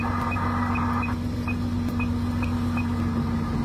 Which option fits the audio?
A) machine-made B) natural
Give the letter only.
B